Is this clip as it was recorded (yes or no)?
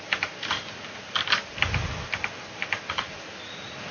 yes